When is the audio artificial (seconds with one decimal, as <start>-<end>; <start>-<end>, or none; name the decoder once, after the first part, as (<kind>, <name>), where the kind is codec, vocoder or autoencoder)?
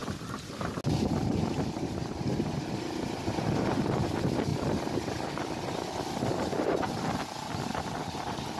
none